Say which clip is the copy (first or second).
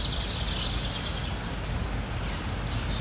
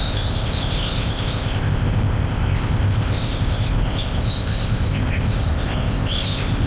second